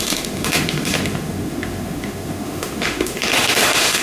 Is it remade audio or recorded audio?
remade